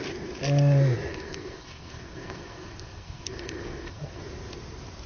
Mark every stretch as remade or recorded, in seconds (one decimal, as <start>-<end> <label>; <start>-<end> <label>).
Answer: 0.0-1.1 recorded; 1.1-4.2 remade; 4.2-5.1 recorded